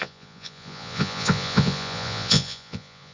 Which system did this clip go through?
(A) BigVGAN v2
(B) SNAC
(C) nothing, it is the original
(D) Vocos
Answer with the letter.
D